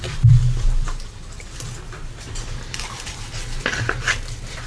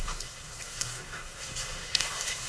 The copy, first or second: second